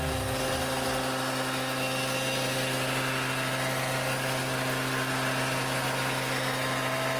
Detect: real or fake real